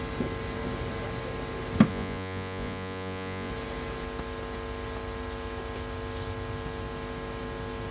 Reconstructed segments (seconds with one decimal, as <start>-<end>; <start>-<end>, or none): 1.9-3.5